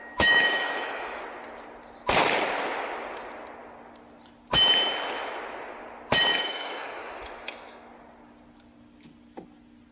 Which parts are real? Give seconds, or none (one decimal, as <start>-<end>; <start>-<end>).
1.2-6.3; 7.9-9.9